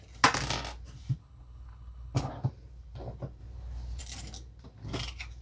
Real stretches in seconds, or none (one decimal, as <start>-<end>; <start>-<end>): 0.0-1.2; 2.3-5.4